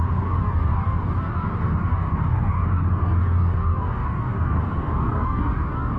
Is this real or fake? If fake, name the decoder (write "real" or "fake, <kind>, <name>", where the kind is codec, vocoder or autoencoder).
fake, codec, DAC